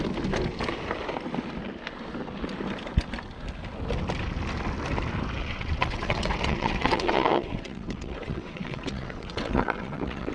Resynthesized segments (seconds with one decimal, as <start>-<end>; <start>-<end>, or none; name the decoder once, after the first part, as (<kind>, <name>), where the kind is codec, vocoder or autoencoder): 5.4-10.3 (vocoder, WaveNeXt)